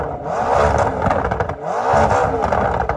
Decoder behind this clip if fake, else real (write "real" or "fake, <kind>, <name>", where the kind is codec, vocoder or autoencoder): real